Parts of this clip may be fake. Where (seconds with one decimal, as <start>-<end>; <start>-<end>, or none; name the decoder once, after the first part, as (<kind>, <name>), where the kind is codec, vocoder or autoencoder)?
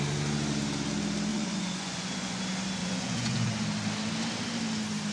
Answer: 1.3-2.4 (vocoder, Vocos); 2.8-3.5